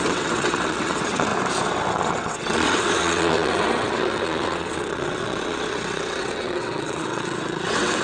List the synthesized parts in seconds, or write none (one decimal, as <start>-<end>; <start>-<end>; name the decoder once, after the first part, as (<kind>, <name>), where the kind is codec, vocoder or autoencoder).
0.0-1.3 (vocoder, WaveNeXt); 1.9-8.0